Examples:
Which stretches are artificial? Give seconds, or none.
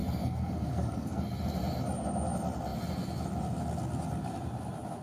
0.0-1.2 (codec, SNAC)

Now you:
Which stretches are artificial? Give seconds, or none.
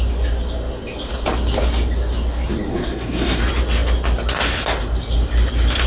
2.7-3.4 (codec, SNAC)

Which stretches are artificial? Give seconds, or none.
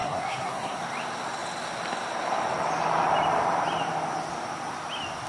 0.0-0.8 (codec, SNAC)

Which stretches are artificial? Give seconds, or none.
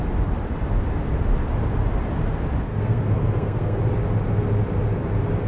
2.7-3.8 (codec, SNAC)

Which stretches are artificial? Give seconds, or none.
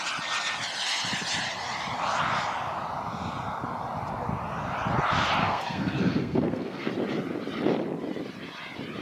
5.4-6.9 (codec, SNAC)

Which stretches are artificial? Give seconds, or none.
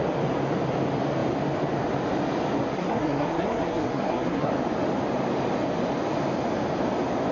2.7-4.5 (codec, SNAC)